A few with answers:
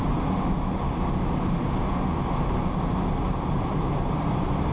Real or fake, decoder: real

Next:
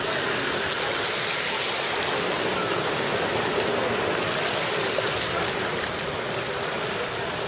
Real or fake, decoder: real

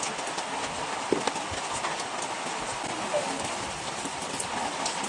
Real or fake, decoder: real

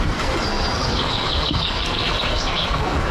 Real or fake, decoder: fake, codec, SNAC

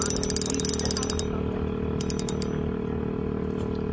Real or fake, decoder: real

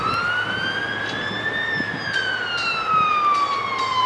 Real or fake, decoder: real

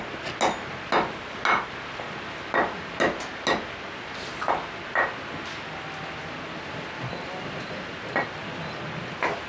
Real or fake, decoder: real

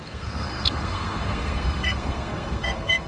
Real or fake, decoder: fake, codec, SNAC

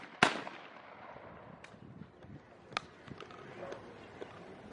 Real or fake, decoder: real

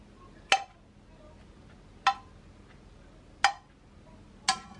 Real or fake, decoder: real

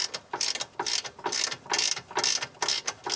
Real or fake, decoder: real